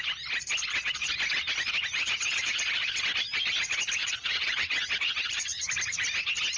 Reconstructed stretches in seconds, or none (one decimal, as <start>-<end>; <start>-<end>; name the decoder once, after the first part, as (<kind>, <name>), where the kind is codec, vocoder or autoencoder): 4.0-4.7 (vocoder, WaveNeXt)